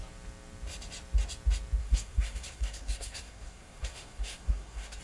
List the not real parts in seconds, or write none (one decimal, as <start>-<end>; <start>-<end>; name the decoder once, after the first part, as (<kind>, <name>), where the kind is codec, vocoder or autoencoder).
1.8-5.0 (codec, SNAC)